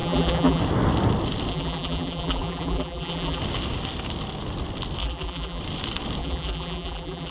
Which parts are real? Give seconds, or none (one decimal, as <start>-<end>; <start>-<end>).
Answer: 0.6-1.5; 3.4-5.0; 5.6-6.2